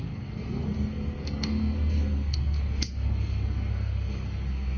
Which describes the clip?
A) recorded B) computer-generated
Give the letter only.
B